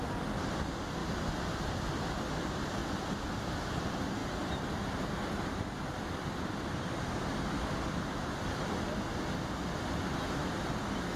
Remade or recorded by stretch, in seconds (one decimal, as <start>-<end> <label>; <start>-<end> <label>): 0.0-11.2 recorded